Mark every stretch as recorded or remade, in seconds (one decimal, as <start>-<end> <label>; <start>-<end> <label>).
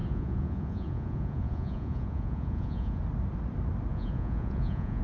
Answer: 0.0-3.0 remade; 3.0-3.9 recorded; 3.9-5.0 remade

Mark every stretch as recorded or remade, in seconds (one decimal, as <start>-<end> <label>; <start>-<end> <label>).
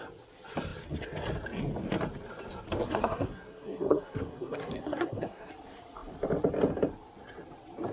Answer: 0.0-2.8 recorded; 2.8-5.5 remade; 5.5-7.9 recorded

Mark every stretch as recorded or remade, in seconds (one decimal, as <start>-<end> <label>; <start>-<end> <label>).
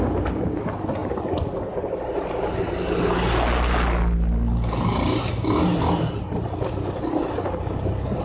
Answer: 0.0-8.2 recorded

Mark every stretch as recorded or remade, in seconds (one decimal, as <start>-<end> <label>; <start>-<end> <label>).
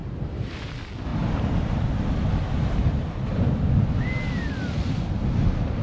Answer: 0.0-0.5 remade; 0.5-1.1 recorded; 1.1-2.0 remade; 2.0-5.8 recorded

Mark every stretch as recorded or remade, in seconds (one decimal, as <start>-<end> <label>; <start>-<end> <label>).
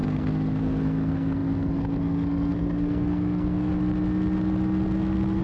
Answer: 0.0-3.7 remade; 3.7-5.4 recorded